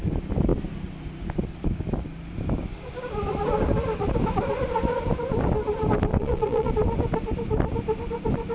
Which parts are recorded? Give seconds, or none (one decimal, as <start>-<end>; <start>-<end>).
0.0-6.1; 6.7-8.5